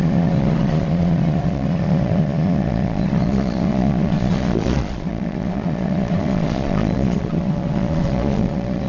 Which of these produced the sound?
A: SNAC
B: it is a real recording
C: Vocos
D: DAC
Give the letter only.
C